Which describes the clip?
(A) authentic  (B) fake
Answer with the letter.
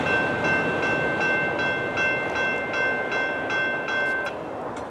A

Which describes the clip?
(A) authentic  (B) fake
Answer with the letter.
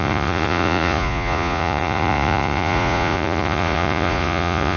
B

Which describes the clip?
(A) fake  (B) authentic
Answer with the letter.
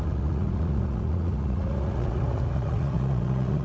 A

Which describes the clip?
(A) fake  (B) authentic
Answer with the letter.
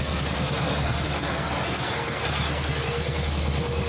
A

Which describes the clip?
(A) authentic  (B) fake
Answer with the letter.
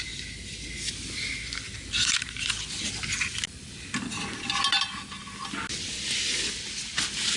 A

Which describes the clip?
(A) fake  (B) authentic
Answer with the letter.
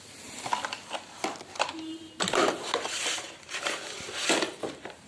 B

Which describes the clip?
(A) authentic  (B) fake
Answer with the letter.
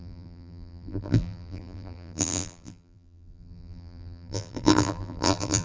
B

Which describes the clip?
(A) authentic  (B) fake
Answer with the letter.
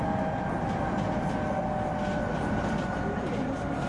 A